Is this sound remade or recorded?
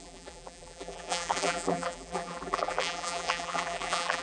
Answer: remade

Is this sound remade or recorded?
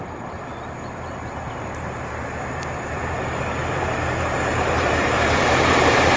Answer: remade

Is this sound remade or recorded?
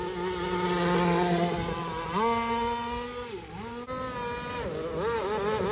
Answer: recorded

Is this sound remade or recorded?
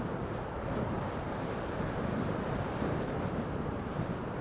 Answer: remade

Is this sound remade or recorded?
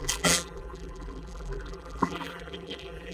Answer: remade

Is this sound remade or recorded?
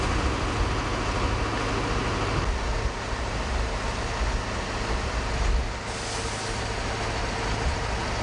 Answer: recorded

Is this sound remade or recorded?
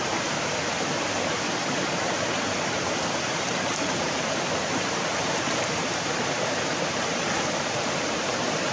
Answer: remade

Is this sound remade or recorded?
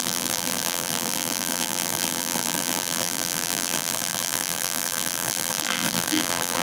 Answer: remade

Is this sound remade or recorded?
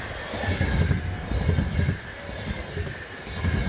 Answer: recorded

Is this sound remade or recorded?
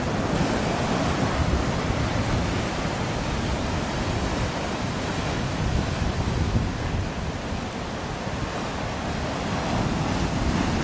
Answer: recorded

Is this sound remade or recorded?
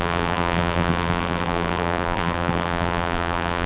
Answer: remade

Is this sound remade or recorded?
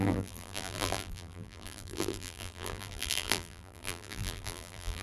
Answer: remade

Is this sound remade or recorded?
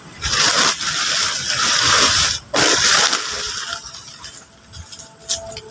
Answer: recorded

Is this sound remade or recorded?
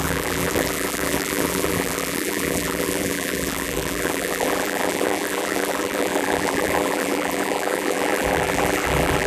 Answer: remade